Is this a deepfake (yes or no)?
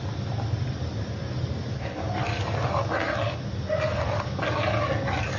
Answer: no